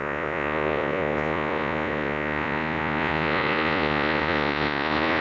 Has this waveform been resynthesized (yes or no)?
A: yes